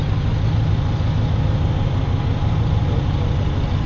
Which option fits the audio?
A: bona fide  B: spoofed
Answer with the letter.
A